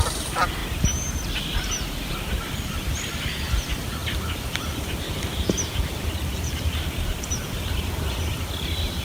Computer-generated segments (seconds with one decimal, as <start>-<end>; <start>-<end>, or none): 0.0-9.0